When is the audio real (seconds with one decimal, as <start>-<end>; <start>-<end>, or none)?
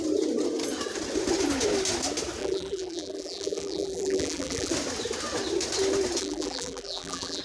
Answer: 0.0-2.4; 4.7-6.2